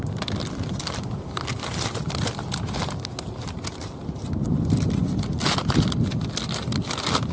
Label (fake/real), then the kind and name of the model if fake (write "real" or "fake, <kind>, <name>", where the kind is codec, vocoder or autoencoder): real